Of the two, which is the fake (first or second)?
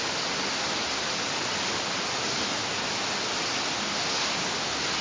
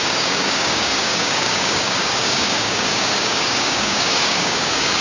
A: second